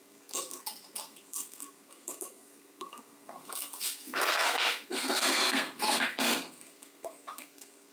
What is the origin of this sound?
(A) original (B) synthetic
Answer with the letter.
B